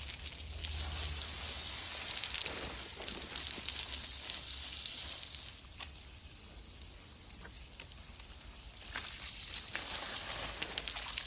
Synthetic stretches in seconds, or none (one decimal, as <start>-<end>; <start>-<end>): none